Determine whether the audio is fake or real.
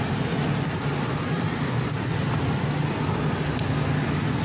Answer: real